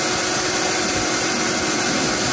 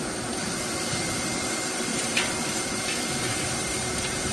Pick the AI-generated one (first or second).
second